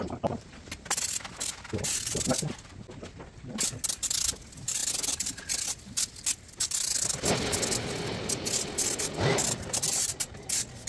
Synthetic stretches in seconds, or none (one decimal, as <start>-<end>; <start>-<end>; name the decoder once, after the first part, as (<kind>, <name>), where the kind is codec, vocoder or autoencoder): none